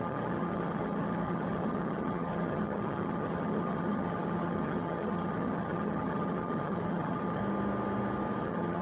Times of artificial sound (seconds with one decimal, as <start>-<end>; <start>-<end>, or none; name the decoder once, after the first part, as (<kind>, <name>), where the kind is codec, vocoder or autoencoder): 0.0-7.4 (vocoder, HiFi-GAN); 8.4-8.8